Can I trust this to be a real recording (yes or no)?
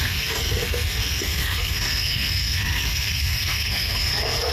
no